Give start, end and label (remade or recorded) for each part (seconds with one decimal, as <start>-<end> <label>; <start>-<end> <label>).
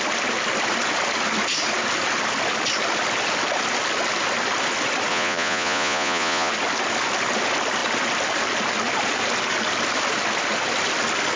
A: 0.0-5.1 recorded; 5.1-6.5 remade; 6.5-11.4 recorded